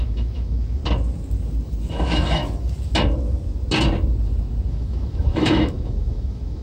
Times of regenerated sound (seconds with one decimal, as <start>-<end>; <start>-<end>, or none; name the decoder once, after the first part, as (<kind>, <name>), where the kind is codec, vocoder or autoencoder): 0.0-0.8 (autoencoder, DAC-VAE); 1.9-2.4; 4.7-6.6